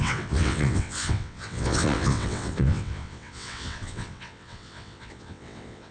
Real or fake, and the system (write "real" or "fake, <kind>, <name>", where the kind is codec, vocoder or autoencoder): fake, vocoder, WaveNeXt